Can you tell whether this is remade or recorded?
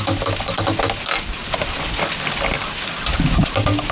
recorded